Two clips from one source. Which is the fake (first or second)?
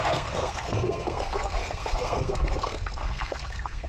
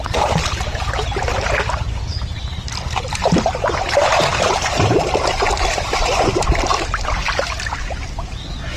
first